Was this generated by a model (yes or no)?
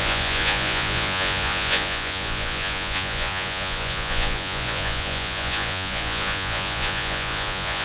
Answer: yes